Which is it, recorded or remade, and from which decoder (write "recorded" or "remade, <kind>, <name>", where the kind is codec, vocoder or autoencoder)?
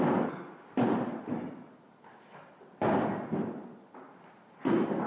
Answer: recorded